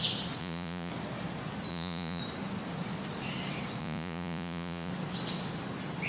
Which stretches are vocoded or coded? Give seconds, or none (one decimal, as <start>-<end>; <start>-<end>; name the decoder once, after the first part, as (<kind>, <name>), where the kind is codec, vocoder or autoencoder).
0.4-0.9 (vocoder, Vocos); 1.7-2.2; 3.8-4.9